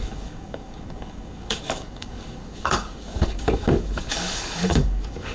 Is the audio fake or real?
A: fake